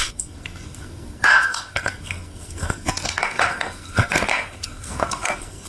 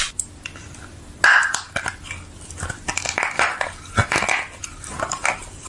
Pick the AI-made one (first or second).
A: first